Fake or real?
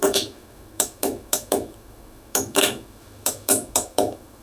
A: fake